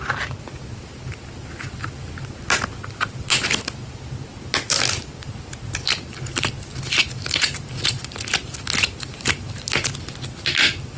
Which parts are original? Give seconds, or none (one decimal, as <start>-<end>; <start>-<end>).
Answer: 0.0-11.0